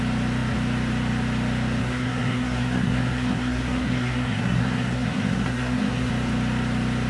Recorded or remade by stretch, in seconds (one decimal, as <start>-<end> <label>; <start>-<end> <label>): 0.0-1.8 recorded; 1.8-6.1 remade; 6.1-7.1 recorded